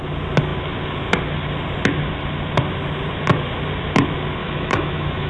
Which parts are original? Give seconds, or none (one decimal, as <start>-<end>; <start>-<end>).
0.0-4.4